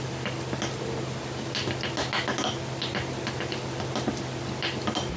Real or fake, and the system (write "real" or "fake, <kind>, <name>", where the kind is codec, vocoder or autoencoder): real